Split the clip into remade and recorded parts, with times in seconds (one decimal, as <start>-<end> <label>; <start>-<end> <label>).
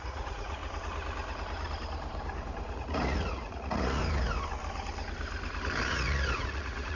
0.0-0.6 remade; 0.6-2.7 recorded; 2.7-4.0 remade; 4.0-5.9 recorded; 5.9-7.0 remade